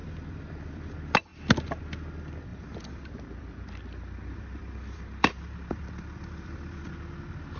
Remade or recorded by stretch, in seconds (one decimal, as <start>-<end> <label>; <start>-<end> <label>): 0.0-0.9 remade; 0.9-2.5 recorded; 2.5-6.8 remade; 6.8-7.6 recorded